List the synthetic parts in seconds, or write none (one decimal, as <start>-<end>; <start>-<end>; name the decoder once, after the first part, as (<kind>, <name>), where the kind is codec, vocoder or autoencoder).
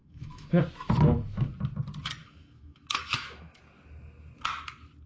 0.0-0.6 (autoencoder, DAC-VAE); 2.2-3.6